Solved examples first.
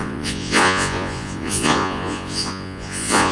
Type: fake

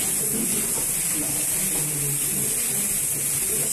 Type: real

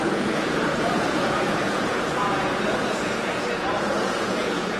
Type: fake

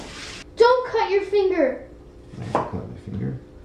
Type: real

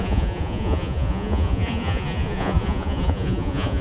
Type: fake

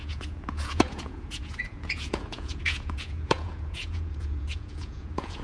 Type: fake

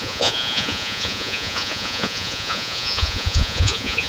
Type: fake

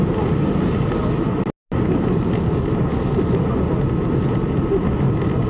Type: real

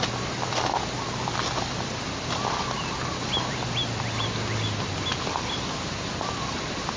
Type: real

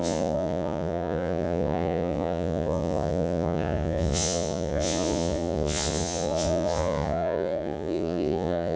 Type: fake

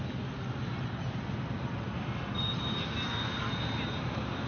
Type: real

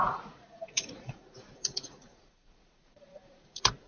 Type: fake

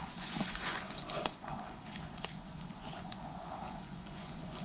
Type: fake